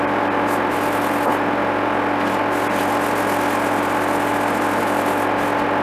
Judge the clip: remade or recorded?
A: recorded